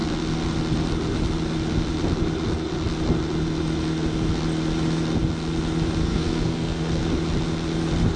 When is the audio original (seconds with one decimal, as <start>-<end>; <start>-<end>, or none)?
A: 0.0-6.0; 6.9-8.2